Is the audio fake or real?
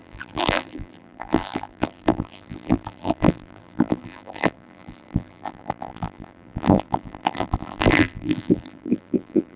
fake